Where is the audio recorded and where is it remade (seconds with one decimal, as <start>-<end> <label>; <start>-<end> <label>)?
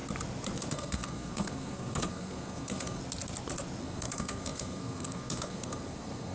0.0-0.7 recorded; 0.7-3.0 remade; 3.0-3.8 recorded; 3.8-6.3 remade